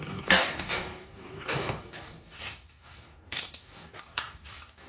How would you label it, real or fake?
fake